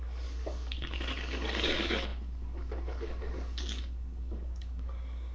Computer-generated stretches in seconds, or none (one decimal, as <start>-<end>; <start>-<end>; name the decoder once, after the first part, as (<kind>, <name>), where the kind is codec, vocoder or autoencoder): 0.0-5.3 (codec, DAC)

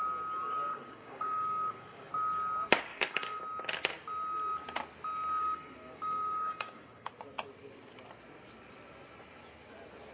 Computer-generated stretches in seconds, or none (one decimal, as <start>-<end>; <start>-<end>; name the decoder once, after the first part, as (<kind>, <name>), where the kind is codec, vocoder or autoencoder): 0.7-2.1 (codec, DAC); 2.9-3.4; 5.4-7.1